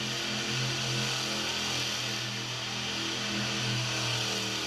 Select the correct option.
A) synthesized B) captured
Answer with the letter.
B